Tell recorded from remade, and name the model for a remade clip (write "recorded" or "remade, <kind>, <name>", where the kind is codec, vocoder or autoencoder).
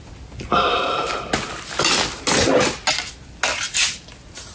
recorded